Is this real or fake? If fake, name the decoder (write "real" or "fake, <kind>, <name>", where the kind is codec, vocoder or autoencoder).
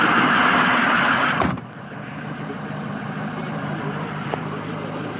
fake, vocoder, BigVGAN v2